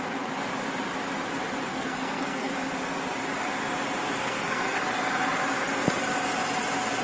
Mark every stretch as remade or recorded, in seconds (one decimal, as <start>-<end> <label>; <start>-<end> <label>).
0.0-1.7 recorded; 1.7-2.5 remade; 2.5-4.2 recorded; 4.2-4.8 remade; 4.8-7.0 recorded